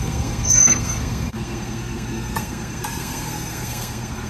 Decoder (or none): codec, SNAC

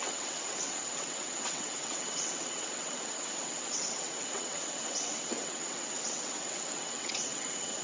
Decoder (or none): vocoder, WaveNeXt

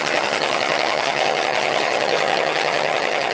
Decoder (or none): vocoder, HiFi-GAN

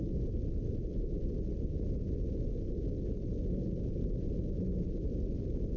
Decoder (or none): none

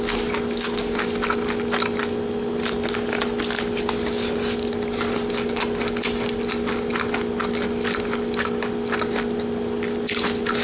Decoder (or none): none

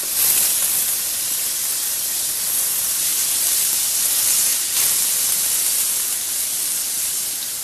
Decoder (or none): none